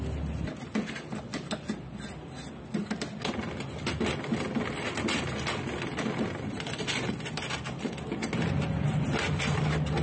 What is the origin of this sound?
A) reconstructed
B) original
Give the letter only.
B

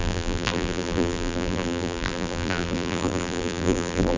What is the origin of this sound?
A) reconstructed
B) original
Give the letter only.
A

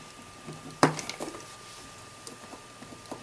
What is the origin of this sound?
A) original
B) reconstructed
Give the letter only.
A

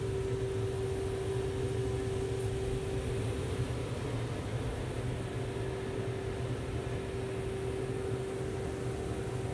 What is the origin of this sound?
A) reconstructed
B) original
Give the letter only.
B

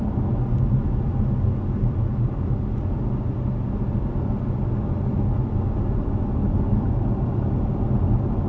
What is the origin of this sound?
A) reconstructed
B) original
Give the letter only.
B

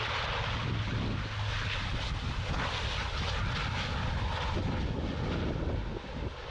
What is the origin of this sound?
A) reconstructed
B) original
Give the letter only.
B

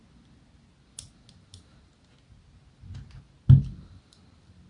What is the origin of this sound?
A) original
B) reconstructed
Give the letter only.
A